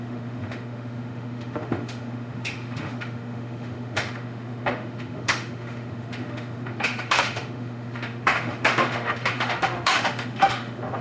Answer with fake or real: fake